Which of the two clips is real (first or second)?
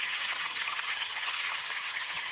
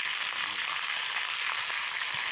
second